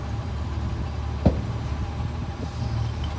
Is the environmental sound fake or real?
real